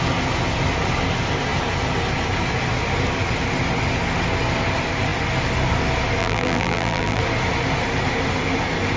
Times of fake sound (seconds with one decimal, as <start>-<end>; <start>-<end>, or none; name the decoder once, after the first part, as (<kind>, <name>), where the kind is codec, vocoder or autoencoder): 6.2-7.2 (vocoder, BigVGAN v2)